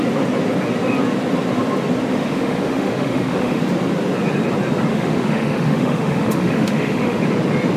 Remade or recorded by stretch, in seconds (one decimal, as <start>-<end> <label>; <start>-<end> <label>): 0.0-2.1 recorded; 2.1-3.6 remade; 3.6-4.9 recorded; 4.9-7.2 remade; 7.2-7.8 recorded